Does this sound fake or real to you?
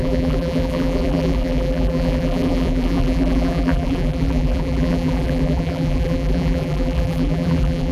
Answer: fake